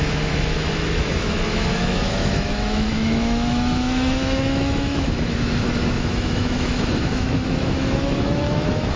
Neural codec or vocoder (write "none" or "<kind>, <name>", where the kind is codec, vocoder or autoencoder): autoencoder, DAC-VAE